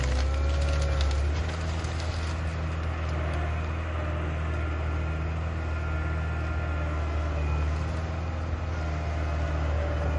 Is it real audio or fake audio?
real